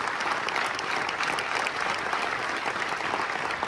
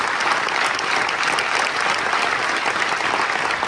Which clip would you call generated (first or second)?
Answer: first